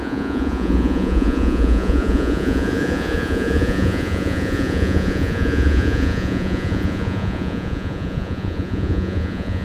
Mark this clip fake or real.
fake